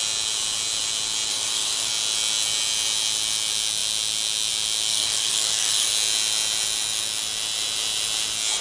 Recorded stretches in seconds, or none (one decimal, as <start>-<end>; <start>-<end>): 0.0-1.3; 1.9-4.9; 5.9-8.6

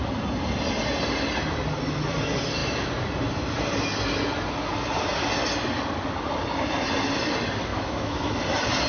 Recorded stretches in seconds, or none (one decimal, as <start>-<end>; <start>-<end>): 0.0-7.7; 8.4-8.9

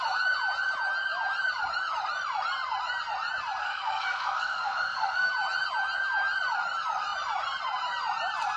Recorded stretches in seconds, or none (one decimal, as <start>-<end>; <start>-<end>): 0.0-3.6; 5.3-8.6

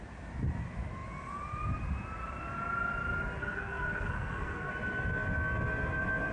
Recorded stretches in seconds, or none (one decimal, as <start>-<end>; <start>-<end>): 0.0-3.4; 4.7-6.3

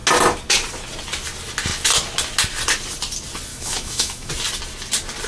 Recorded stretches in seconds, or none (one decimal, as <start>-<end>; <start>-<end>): 0.0-3.5; 4.3-5.3

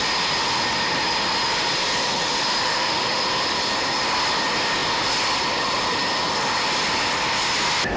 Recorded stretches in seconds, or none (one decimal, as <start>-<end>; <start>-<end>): 0.0-2.6; 3.2-8.0

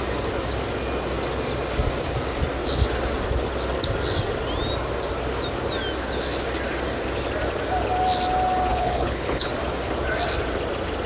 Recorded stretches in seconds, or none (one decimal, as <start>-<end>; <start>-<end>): 0.0-8.7; 9.5-11.1

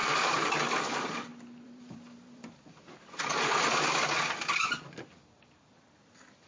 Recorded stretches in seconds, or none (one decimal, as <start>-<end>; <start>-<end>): none